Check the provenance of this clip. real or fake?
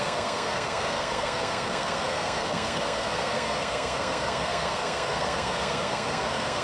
fake